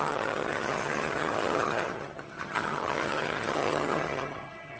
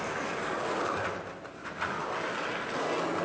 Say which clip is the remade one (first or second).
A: first